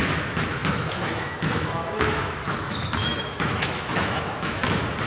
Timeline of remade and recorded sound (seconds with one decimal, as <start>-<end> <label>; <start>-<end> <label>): 0.0-4.6 remade; 4.6-5.1 recorded